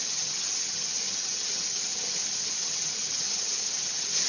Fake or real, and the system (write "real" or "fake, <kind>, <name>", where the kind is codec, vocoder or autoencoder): fake, vocoder, HiFi-GAN